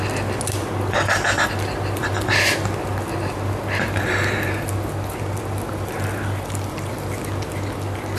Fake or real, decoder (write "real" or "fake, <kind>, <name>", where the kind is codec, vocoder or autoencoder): real